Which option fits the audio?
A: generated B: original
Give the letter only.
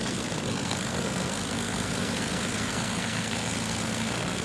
A